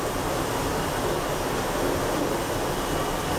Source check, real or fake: real